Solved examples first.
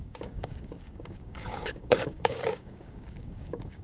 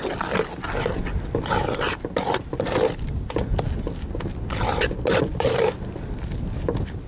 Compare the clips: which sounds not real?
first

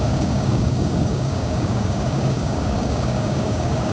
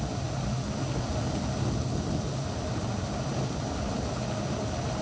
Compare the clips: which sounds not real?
first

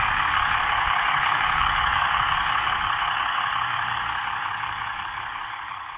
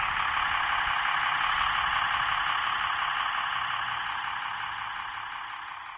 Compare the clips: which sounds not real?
first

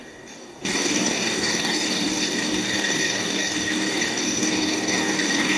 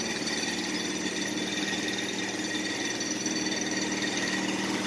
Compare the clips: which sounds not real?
first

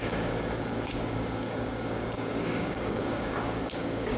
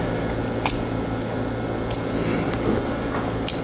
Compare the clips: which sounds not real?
first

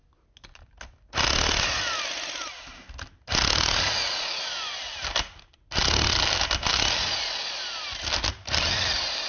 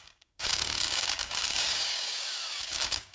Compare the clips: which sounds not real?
second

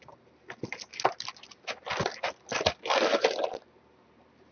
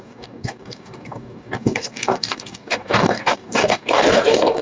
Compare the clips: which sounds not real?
second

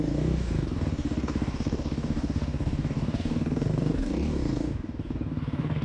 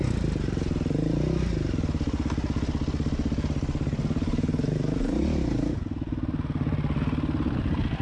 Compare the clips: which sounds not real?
first